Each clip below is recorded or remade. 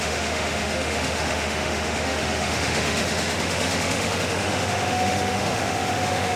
remade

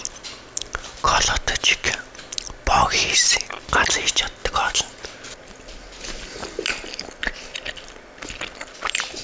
recorded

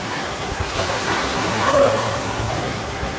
remade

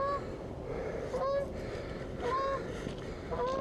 recorded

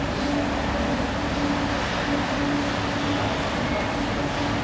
recorded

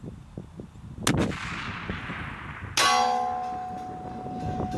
recorded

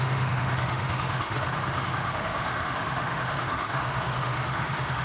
remade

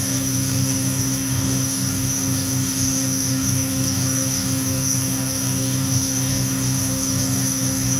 remade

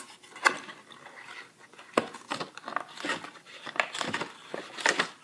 recorded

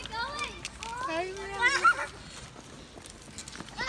recorded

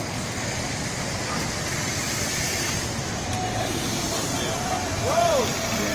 recorded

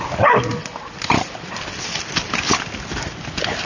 recorded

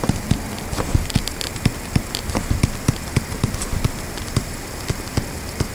remade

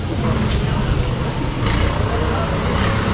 recorded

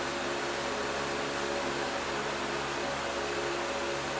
remade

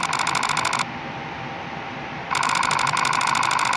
recorded